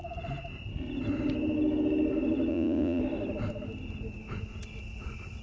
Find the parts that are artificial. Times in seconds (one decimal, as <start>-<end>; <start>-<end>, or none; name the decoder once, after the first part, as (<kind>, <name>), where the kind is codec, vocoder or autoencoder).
2.5-3.0 (vocoder, Vocos)